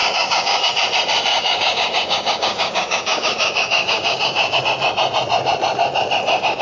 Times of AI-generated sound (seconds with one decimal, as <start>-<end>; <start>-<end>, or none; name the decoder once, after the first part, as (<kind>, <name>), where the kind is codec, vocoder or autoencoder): 0.0-0.7 (codec, DAC); 1.3-4.6